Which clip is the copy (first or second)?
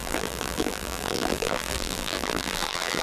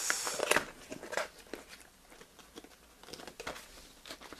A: first